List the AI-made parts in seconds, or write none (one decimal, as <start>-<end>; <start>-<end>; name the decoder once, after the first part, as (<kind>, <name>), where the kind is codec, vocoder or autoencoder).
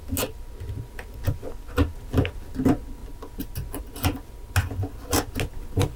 none